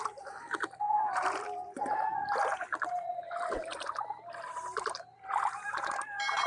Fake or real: fake